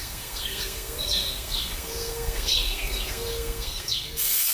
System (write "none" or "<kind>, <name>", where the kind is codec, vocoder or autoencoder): codec, SNAC